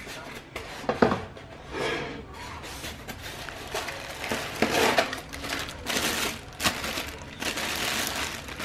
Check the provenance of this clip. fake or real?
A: real